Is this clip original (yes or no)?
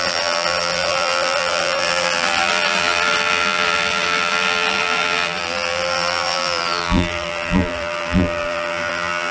no